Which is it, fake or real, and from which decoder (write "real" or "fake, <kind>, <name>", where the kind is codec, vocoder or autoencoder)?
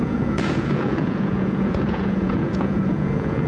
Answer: fake, vocoder, Vocos